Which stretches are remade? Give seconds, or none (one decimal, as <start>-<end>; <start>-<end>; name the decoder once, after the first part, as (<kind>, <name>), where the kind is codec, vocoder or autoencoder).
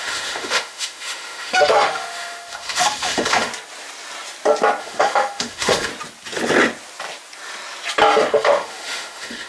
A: 0.0-3.5 (autoencoder, DAC-VAE); 4.8-5.9; 8.3-9.5